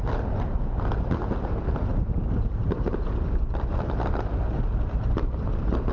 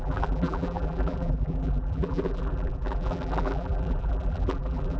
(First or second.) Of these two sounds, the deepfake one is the second